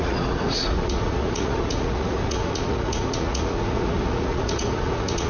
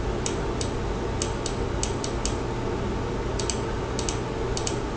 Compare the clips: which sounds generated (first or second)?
first